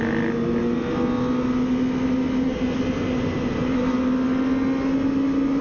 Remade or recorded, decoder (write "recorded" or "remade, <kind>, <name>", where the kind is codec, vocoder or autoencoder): recorded